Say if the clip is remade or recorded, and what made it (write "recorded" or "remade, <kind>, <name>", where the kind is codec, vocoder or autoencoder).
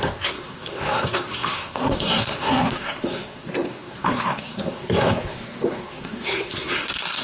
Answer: remade, codec, SNAC